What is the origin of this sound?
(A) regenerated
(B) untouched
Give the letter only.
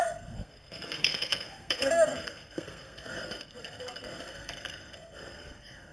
A